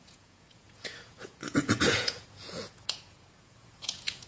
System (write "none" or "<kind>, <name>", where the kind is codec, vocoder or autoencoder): vocoder, Vocos